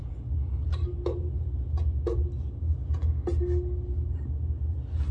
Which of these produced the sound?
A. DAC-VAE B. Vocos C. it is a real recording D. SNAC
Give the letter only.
C